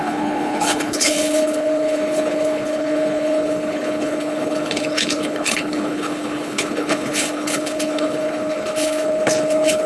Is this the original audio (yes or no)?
no